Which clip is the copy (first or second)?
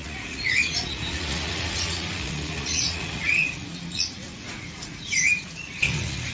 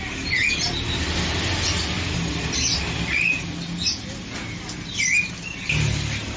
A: first